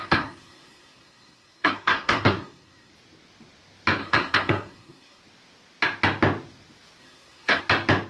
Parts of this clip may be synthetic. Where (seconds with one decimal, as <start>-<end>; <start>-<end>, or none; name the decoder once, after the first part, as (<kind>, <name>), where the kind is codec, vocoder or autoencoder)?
0.0-2.9 (codec, SNAC); 4.0-5.2; 7.0-7.6